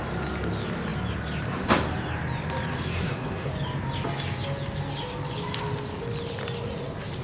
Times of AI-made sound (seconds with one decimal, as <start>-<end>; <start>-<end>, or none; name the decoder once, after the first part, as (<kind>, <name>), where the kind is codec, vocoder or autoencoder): 2.9-3.5 (codec, SNAC)